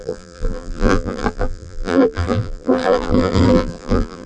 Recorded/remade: remade